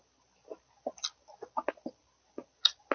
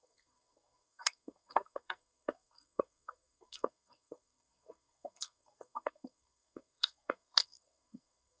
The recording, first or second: first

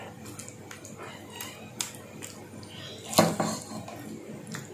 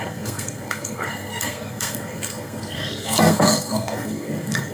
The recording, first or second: first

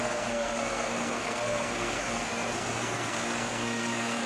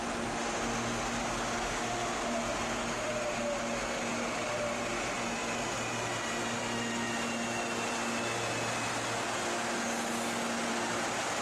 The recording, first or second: second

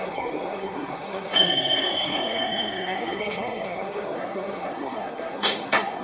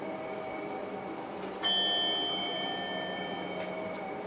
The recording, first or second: second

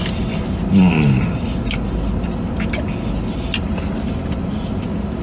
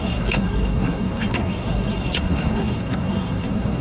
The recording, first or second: first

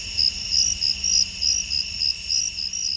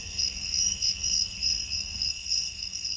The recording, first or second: first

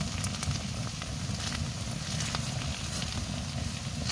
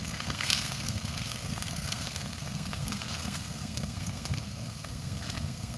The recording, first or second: first